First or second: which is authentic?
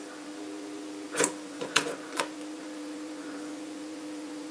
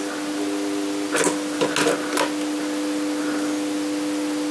second